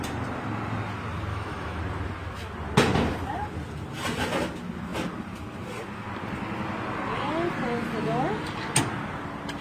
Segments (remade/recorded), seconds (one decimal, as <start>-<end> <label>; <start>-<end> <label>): 0.0-1.3 recorded; 1.3-1.8 remade; 1.8-9.6 recorded